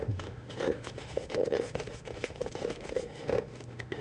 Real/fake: fake